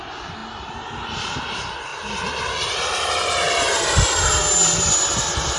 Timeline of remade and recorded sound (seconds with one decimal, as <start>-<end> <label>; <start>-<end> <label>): 0.0-5.6 recorded